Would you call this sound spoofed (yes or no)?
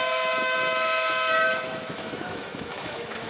yes